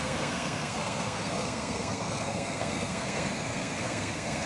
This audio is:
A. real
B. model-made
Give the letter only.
B